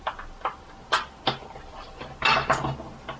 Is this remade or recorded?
recorded